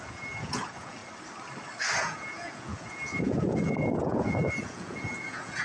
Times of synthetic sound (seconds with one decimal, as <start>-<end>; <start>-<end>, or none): 0.0-1.0; 2.0-5.6